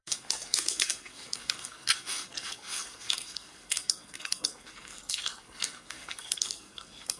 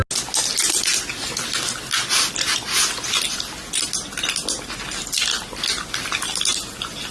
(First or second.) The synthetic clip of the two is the first